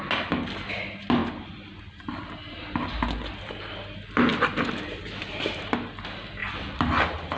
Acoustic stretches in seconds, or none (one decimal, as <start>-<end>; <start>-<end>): 0.0-1.2; 1.8-4.3; 5.6-6.4; 7.0-7.4